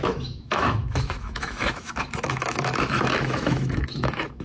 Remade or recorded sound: remade